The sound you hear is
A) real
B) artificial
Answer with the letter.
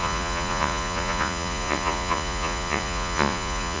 B